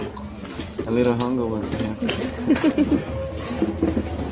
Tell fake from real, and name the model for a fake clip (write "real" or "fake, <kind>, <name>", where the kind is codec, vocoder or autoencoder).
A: real